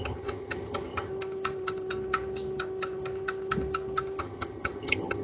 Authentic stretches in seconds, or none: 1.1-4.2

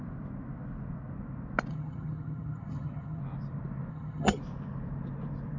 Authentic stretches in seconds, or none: 0.0-1.7; 3.2-3.9; 4.4-5.6

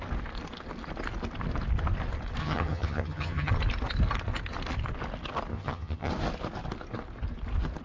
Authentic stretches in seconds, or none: 0.0-2.4; 3.5-5.5; 6.1-7.8

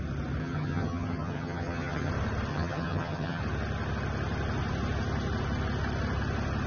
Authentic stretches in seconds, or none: 0.0-0.4; 2.1-2.5; 3.4-6.7

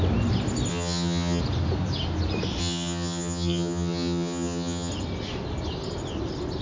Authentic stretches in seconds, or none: 0.0-0.7; 1.4-2.6; 4.9-6.6

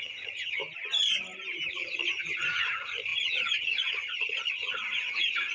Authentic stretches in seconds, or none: 0.6-1.7

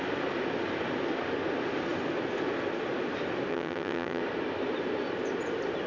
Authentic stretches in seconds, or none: 0.0-3.5; 4.2-5.9